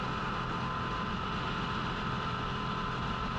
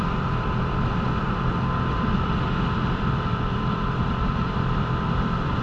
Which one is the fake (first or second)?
second